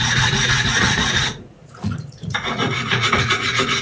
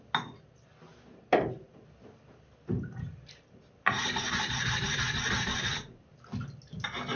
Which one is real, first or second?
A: second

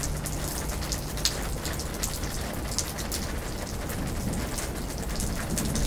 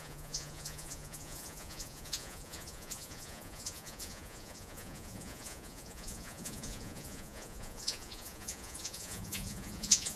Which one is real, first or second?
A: first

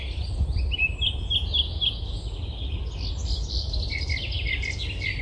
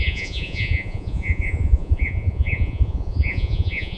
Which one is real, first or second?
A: first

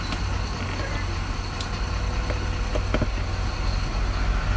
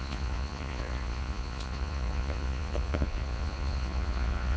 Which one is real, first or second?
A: first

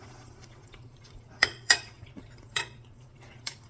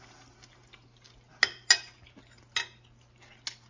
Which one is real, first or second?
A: second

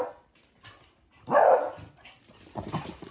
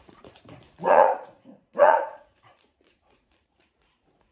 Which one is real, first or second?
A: first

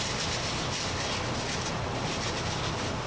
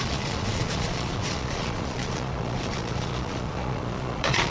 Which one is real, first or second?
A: first